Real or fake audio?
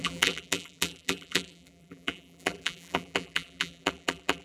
fake